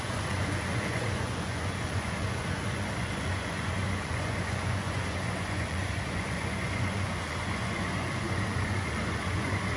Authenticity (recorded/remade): remade